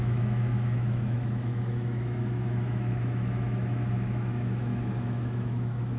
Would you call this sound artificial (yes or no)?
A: yes